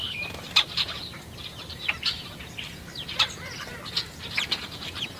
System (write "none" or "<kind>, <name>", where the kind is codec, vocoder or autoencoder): vocoder, BigVGAN v2